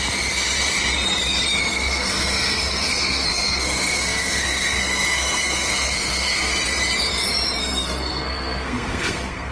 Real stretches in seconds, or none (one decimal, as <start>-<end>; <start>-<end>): 0.0-1.7; 6.5-7.6